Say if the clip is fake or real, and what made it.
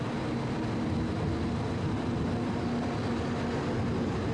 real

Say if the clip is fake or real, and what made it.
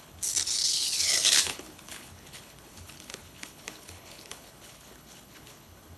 fake, codec, HILCodec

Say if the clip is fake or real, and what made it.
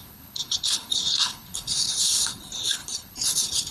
fake, codec, HILCodec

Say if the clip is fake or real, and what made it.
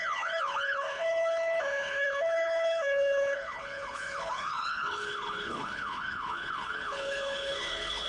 fake, codec, HILCodec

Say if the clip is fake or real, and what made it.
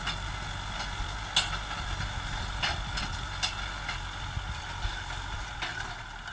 real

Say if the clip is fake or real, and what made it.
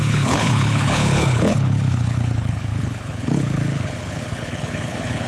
fake, codec, HILCodec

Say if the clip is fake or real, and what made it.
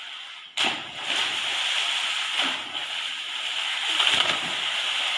real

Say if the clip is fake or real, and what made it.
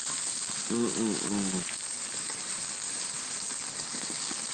real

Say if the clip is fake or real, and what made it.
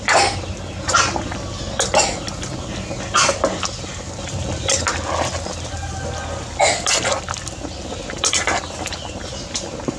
real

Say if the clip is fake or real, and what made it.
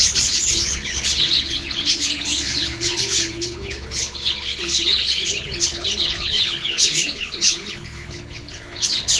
fake, codec, HILCodec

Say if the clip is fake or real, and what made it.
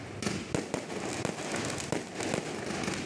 real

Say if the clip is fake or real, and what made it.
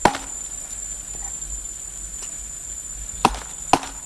real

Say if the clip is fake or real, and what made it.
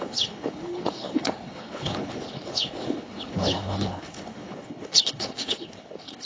fake, codec, HILCodec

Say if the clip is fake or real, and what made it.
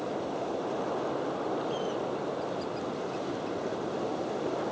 real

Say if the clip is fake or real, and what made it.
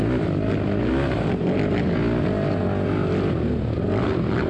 real